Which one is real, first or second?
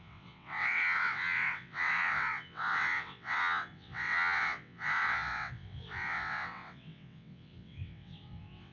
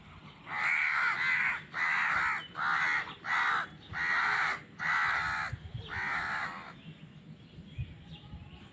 second